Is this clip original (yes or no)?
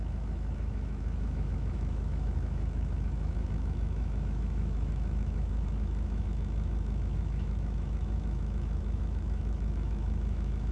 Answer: no